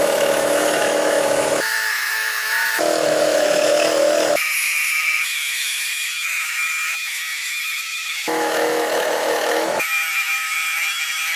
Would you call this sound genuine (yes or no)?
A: no